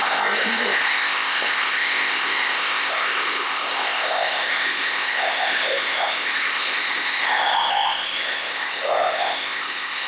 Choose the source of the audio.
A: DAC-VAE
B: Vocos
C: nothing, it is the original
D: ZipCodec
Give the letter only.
D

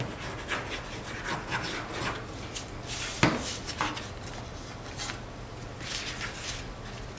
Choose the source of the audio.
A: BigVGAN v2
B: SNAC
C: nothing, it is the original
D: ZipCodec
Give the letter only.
C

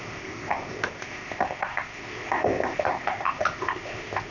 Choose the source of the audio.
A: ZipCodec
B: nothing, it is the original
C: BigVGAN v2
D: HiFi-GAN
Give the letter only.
A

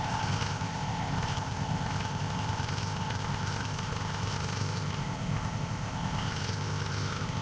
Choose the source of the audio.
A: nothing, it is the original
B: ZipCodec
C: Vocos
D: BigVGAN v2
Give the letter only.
B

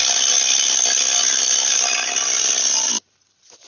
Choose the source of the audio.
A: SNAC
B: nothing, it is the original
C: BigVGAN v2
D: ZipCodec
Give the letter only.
B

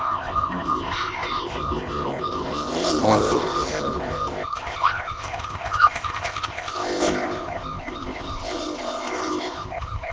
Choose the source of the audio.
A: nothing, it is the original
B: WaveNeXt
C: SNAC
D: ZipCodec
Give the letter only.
D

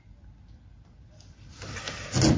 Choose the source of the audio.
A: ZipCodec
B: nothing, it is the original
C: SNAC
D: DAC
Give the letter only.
B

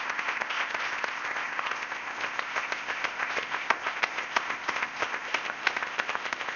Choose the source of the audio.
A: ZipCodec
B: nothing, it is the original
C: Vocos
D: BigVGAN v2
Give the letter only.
A